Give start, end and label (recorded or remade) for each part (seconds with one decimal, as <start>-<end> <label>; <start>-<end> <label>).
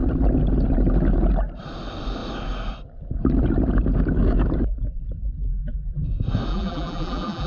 0.0-5.5 recorded; 5.5-6.0 remade; 6.0-6.5 recorded; 6.5-7.5 remade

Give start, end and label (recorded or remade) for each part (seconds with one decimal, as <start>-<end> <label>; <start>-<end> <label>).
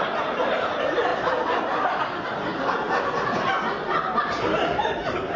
0.0-2.5 remade; 2.5-4.2 recorded; 4.2-5.4 remade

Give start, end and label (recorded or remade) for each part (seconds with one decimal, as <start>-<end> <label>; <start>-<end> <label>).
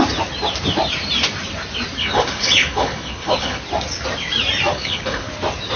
0.0-2.0 recorded; 2.0-3.6 remade; 3.6-4.7 recorded; 4.7-5.3 remade; 5.3-5.8 recorded